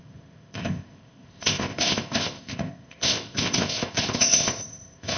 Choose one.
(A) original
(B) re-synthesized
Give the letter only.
B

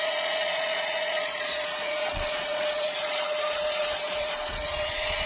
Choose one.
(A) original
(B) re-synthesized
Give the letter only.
B